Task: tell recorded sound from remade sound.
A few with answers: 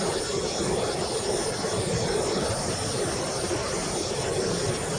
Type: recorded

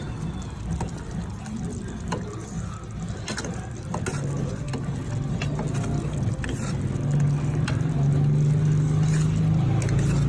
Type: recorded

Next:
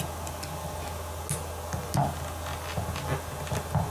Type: recorded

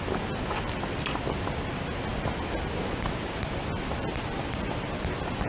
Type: recorded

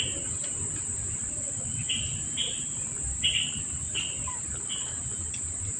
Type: recorded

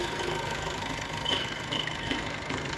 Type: remade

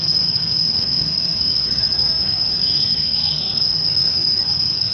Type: remade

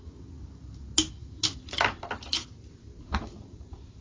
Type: recorded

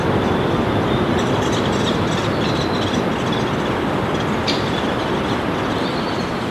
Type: recorded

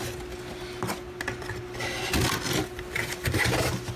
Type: recorded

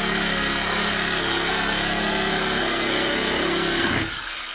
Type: remade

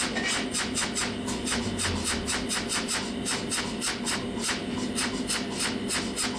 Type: recorded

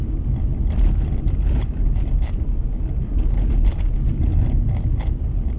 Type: recorded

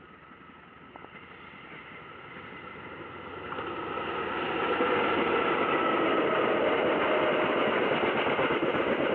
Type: recorded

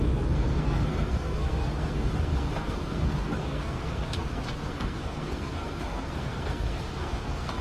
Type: remade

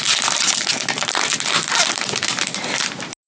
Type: recorded